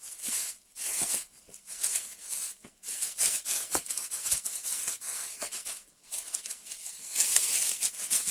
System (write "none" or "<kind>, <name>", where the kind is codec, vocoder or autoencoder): codec, SNAC